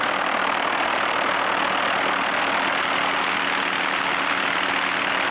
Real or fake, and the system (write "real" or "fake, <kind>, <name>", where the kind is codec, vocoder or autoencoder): real